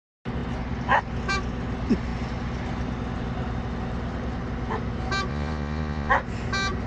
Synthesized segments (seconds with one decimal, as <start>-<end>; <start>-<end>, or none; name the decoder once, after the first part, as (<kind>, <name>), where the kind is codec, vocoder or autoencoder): 5.3-6.1 (vocoder, Vocos)